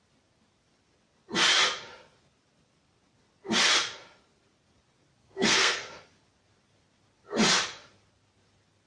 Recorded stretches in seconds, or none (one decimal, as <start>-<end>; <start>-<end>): 0.0-5.2; 5.9-8.9